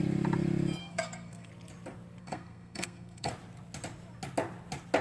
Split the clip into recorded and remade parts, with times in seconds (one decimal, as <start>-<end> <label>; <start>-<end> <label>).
0.0-0.8 recorded; 0.8-1.5 remade; 1.5-2.2 recorded; 2.2-3.3 remade; 3.3-5.0 recorded